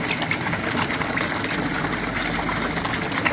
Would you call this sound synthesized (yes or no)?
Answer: no